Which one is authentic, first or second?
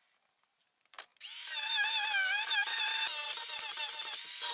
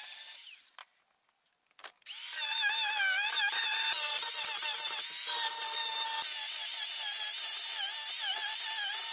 second